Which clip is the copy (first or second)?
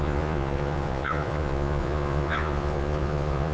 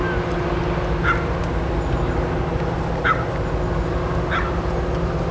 first